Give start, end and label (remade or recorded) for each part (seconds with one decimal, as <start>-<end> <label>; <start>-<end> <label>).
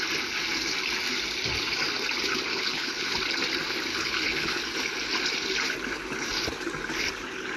0.0-2.5 recorded; 2.5-3.2 remade; 3.2-3.9 recorded; 3.9-4.6 remade; 4.6-7.6 recorded